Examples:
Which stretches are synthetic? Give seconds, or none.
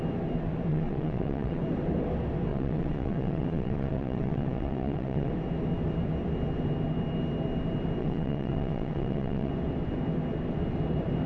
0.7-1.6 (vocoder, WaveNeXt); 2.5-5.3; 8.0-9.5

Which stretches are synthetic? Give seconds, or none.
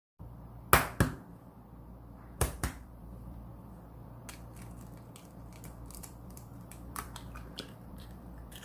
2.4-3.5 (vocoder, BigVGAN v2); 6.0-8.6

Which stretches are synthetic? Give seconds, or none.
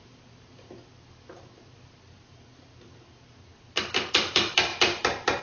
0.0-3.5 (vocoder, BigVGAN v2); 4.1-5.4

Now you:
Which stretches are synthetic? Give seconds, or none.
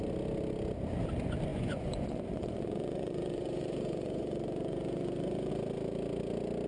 1.5-5.5 (vocoder, Vocos)